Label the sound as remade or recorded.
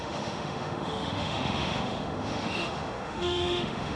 remade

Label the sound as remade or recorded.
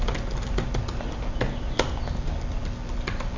recorded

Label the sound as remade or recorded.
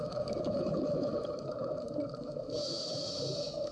remade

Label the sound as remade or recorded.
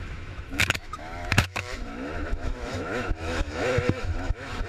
remade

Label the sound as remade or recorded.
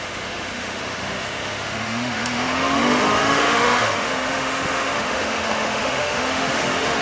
remade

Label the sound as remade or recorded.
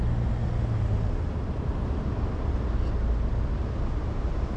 recorded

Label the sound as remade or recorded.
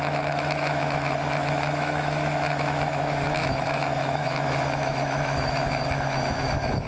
remade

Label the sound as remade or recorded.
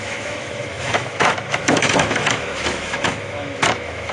remade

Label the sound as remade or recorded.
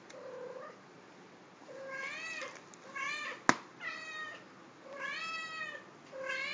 recorded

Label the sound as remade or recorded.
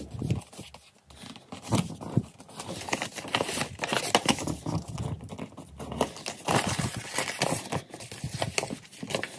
recorded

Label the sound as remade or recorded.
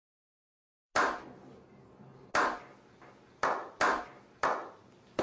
recorded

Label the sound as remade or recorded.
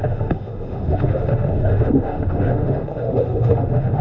remade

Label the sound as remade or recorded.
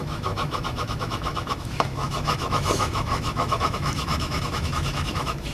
remade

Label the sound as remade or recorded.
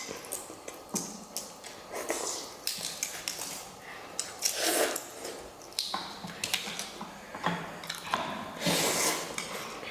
recorded